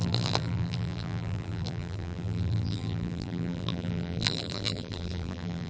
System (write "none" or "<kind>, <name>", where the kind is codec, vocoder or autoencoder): vocoder, BigVGAN v2